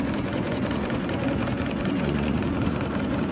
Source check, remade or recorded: remade